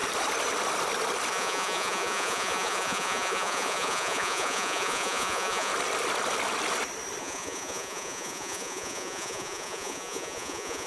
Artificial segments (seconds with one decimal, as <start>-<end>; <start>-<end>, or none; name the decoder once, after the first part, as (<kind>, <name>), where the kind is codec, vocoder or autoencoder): 1.3-5.7 (vocoder, Vocos); 7.2-10.9